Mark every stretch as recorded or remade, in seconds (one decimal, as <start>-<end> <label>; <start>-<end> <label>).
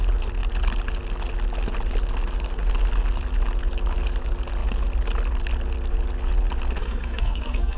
0.0-6.8 recorded; 6.8-7.8 remade